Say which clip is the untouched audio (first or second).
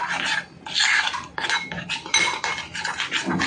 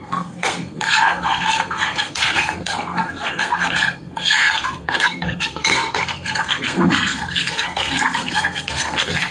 first